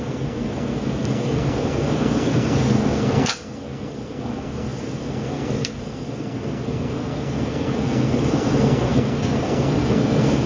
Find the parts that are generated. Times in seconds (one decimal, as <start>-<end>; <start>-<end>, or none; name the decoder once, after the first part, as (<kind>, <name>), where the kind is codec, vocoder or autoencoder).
0.0-10.5 (codec, SNAC)